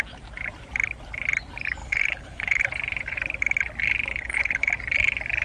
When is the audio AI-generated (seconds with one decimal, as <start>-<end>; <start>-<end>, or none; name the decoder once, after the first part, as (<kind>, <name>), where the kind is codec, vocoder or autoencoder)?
1.8-2.6 (codec, HILCodec); 4.1-4.7